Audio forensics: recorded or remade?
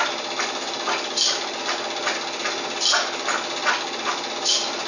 recorded